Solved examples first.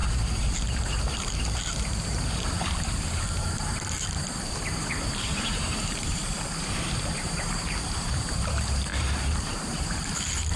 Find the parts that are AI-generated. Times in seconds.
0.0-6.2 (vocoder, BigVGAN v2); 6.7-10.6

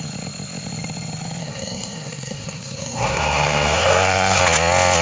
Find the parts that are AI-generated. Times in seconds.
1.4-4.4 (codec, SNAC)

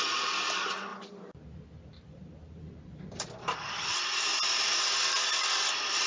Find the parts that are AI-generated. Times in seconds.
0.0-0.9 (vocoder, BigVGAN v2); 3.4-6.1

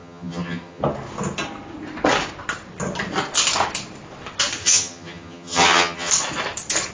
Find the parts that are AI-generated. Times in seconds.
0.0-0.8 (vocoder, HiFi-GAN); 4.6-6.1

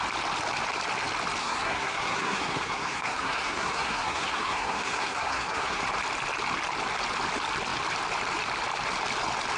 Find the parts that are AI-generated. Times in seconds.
1.4-5.8 (codec, SNAC)

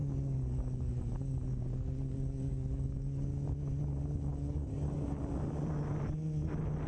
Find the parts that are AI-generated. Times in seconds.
0.0-3.3 (codec, DAC); 4.3-5.2